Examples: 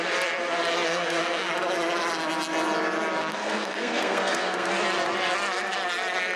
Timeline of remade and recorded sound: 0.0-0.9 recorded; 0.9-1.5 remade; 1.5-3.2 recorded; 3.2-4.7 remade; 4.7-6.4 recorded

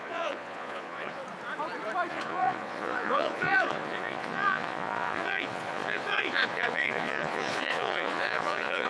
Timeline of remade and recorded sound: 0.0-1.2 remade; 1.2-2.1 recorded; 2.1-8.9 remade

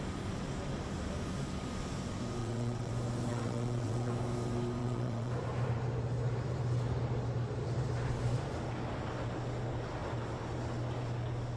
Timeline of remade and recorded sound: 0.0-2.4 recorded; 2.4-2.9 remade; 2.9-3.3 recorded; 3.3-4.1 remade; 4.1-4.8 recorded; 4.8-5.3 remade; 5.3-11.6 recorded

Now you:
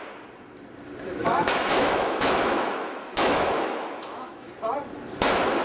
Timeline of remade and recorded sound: 0.0-1.2 recorded; 1.2-4.5 remade; 4.5-5.6 recorded

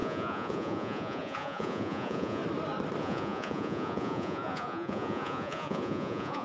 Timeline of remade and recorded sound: 0.0-2.4 remade; 2.4-3.0 recorded; 3.0-6.4 remade